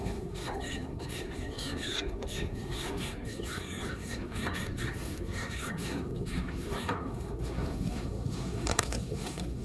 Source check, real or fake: fake